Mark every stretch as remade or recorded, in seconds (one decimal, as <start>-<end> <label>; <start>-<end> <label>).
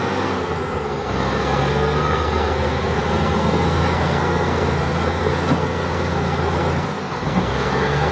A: 0.0-8.1 remade